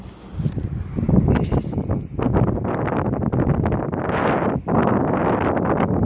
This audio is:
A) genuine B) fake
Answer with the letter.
A